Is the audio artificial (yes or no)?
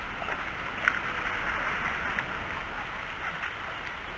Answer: no